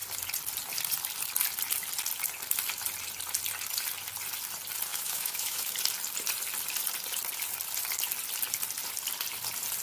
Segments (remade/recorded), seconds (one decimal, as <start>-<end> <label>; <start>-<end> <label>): 0.0-4.9 recorded; 4.9-5.7 remade; 5.7-9.8 recorded